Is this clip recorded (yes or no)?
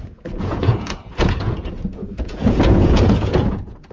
no